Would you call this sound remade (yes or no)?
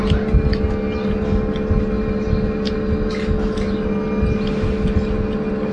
no